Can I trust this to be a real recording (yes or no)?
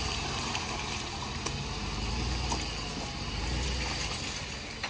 yes